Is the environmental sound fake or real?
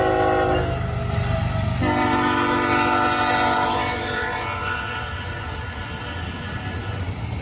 real